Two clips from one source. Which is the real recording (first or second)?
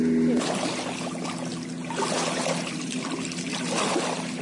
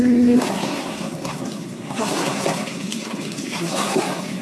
first